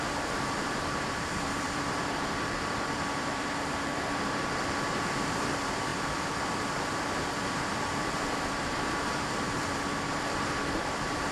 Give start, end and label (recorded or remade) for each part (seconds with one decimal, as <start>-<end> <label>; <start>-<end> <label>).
0.0-5.9 remade; 5.9-8.0 recorded; 8.0-11.3 remade